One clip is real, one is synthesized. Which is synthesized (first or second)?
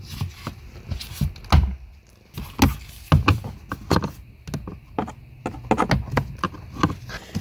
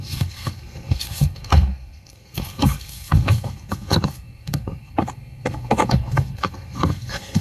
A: second